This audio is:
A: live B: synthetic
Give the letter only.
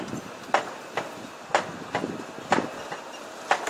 A